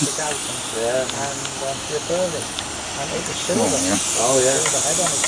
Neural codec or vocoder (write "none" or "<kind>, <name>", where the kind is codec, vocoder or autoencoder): none